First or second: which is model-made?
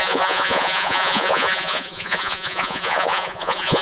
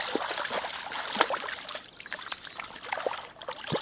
first